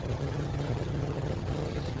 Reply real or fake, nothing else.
fake